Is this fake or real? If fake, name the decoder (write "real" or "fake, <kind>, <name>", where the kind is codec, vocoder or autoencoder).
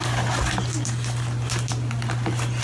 real